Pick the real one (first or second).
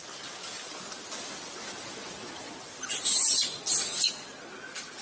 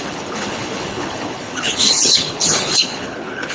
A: first